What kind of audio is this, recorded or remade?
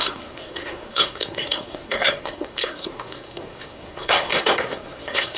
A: remade